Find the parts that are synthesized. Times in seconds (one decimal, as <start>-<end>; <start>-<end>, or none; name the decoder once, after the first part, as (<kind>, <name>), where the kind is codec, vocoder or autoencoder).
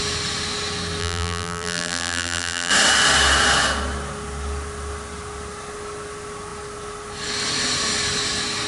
1.0-2.7 (vocoder, BigVGAN v2)